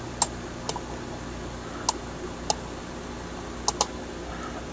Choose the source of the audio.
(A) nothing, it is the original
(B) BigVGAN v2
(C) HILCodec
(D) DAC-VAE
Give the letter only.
A